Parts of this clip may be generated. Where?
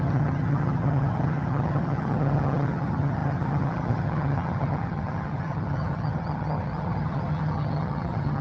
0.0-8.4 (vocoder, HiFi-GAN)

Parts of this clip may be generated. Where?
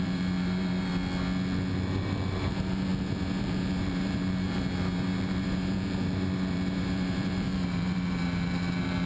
0.0-0.9 (vocoder, BigVGAN v2); 1.7-2.9; 3.4-9.1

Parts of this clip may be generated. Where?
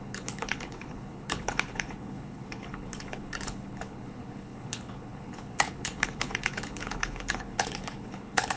0.0-8.6 (codec, HILCodec)